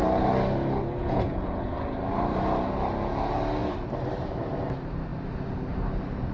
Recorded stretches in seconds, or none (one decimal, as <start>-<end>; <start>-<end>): 0.0-1.0; 1.7-6.3